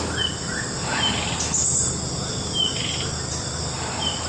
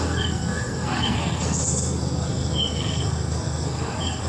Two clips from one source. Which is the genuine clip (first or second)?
first